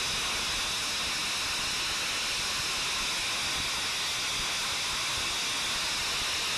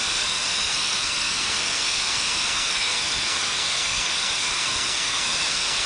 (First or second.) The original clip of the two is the first